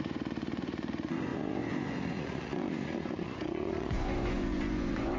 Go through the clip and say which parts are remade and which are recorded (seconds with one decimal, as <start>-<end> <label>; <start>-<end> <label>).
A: 0.0-5.2 remade